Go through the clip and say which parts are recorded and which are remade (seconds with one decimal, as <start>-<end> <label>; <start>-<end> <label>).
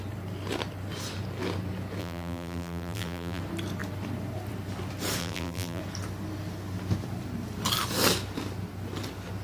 0.0-2.0 recorded; 2.0-3.4 remade; 3.4-5.2 recorded; 5.2-5.8 remade; 5.8-9.4 recorded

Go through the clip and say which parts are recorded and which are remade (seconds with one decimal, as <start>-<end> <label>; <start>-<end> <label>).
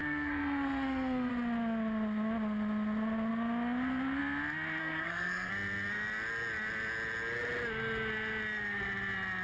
0.0-1.3 remade; 1.3-4.8 recorded; 4.8-5.5 remade; 5.5-9.4 recorded